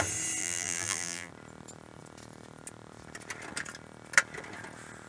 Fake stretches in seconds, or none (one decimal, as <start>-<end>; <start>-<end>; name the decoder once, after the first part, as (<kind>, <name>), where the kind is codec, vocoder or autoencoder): 0.4-1.3 (vocoder, BigVGAN v2)